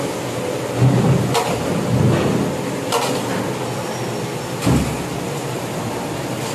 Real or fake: real